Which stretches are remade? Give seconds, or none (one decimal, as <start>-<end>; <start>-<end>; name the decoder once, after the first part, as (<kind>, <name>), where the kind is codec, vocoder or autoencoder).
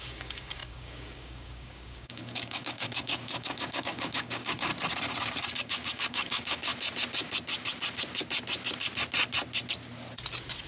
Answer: 0.0-4.7 (codec, DAC); 5.6-6.7